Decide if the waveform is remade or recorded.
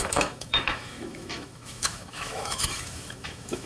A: remade